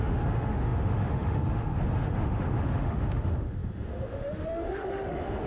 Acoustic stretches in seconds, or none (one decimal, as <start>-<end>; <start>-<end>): none